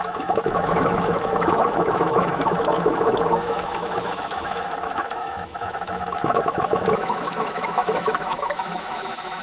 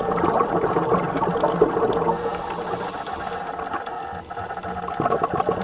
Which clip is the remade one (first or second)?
first